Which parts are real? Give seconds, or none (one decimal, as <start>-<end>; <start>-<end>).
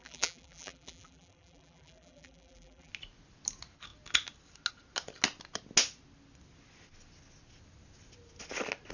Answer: 2.9-8.9